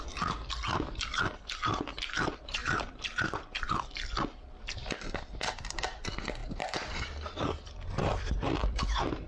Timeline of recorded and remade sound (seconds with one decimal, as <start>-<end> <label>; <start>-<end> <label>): 0.0-2.6 recorded; 2.6-3.7 remade; 3.7-6.4 recorded; 6.4-9.3 remade

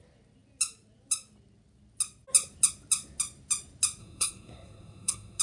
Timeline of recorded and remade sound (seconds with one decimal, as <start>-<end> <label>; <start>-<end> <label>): 0.0-4.0 recorded; 4.0-5.4 remade

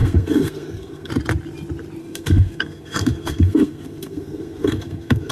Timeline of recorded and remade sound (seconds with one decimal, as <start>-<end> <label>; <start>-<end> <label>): 0.0-1.1 remade; 1.1-2.0 recorded; 2.0-5.3 remade

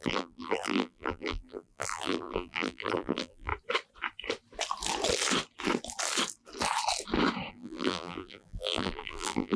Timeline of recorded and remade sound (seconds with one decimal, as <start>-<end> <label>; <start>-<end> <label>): 0.0-3.5 remade; 3.5-7.5 recorded; 7.5-9.6 remade

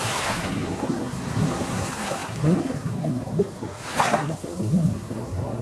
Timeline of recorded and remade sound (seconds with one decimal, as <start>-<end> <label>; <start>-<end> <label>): 0.0-5.6 remade

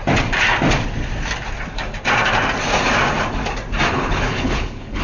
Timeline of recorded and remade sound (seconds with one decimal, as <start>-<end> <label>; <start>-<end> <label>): 0.0-3.9 recorded; 3.9-5.0 remade